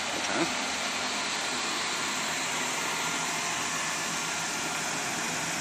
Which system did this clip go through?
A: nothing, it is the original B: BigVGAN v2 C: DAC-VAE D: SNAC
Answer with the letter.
A